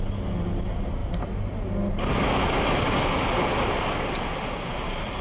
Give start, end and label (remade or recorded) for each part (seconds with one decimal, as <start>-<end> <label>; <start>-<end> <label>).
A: 0.0-5.2 recorded